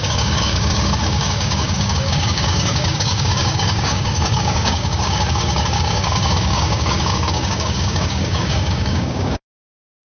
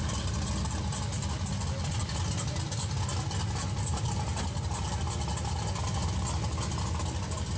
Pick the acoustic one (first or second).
second